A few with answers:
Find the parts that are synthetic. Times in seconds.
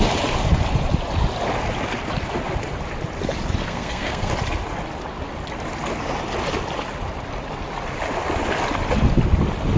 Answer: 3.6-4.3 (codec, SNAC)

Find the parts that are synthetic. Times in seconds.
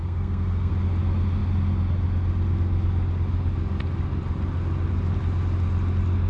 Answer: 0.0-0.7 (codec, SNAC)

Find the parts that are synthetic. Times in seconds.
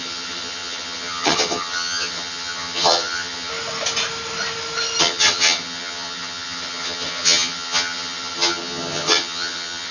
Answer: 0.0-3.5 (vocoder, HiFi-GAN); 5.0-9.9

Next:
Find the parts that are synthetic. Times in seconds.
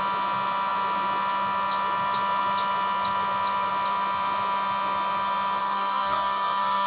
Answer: 5.6-6.9 (codec, SNAC)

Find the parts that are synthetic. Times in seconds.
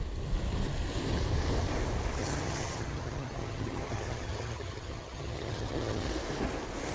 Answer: 2.2-6.1 (vocoder, HiFi-GAN)